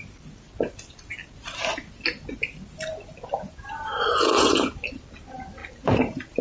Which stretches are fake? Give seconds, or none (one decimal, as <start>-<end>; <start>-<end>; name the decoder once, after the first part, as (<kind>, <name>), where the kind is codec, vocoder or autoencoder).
5.6-6.4 (vocoder, BigVGAN v2)